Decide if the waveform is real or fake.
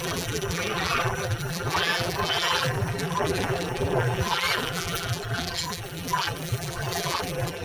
fake